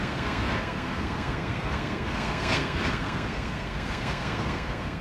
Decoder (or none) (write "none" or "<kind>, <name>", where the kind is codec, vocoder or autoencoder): codec, SNAC